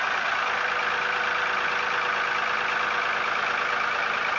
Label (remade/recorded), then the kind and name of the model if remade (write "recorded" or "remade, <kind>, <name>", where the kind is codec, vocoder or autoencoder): recorded